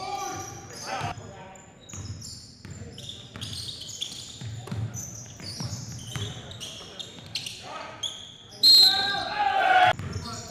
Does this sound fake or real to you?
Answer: real